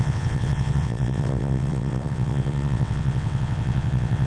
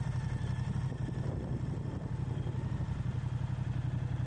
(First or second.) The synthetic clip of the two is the first